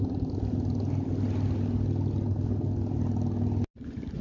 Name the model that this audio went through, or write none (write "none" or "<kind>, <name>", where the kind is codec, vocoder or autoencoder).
none